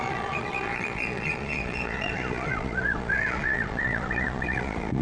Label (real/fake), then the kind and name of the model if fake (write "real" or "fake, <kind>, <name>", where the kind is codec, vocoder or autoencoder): fake, vocoder, Vocos